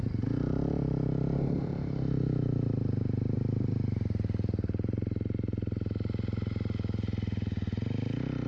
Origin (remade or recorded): recorded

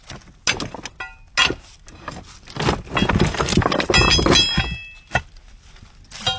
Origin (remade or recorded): recorded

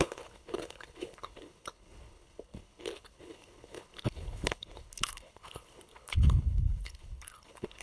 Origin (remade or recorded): remade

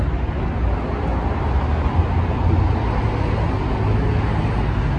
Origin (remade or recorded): recorded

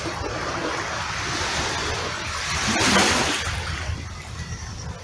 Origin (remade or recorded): recorded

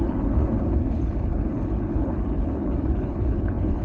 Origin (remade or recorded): remade